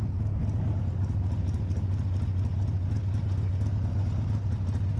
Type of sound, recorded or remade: recorded